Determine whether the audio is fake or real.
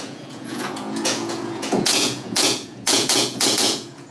fake